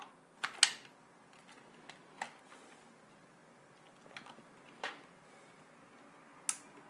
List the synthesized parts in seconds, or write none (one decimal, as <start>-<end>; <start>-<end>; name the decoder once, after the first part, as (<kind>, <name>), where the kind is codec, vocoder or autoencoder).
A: none